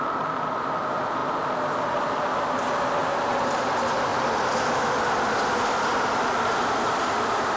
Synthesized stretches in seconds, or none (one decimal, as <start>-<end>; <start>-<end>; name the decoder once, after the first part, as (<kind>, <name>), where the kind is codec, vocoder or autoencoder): 3.0-3.6 (vocoder, BigVGAN v2); 4.1-4.7